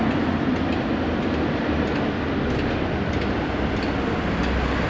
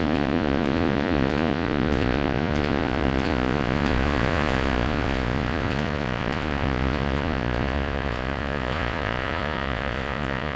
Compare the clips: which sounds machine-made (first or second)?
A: second